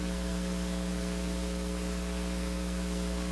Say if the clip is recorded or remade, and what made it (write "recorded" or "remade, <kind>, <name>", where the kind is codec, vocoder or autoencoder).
remade, codec, SNAC